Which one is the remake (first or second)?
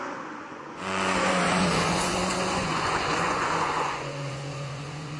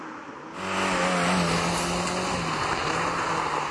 first